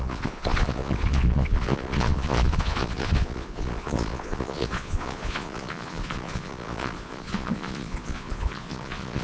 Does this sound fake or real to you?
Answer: fake